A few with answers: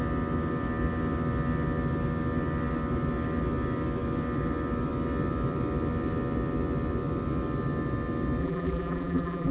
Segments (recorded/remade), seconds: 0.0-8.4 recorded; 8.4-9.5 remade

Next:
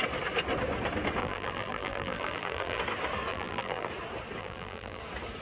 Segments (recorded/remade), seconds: 0.0-1.2 recorded; 1.2-2.8 remade; 2.8-3.3 recorded; 3.3-3.9 remade; 3.9-4.4 recorded; 4.4-5.0 remade; 5.0-5.4 recorded